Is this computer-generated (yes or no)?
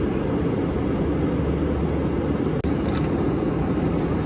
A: no